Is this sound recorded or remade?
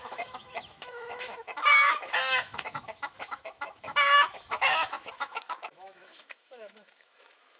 remade